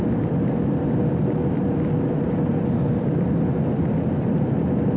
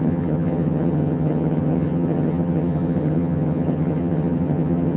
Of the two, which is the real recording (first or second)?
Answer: first